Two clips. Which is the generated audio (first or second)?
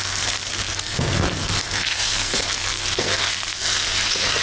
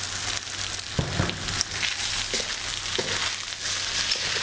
first